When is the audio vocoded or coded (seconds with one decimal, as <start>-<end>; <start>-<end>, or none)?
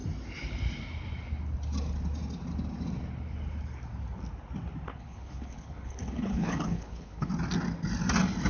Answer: 4.9-7.3